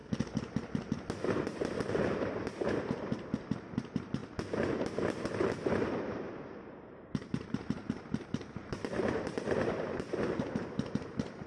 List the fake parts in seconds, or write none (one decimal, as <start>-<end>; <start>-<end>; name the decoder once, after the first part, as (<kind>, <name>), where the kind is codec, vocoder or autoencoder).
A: 1.3-4.2 (vocoder, BigVGAN v2); 4.9-11.5